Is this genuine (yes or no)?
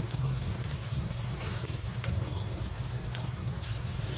no